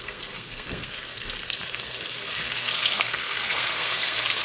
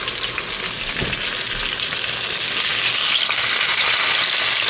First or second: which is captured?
second